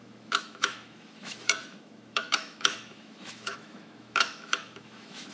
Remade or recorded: remade